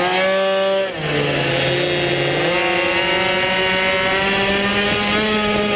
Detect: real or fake real